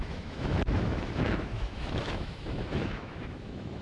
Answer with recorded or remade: remade